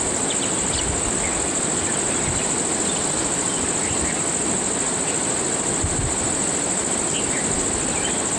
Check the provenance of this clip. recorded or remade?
recorded